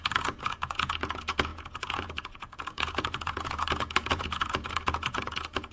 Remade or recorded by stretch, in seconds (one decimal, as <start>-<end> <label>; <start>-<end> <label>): 0.0-5.7 remade